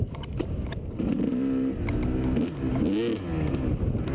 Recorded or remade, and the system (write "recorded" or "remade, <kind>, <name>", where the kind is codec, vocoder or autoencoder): recorded